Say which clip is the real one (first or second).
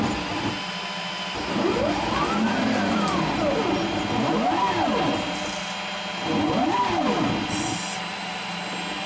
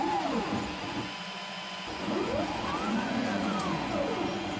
first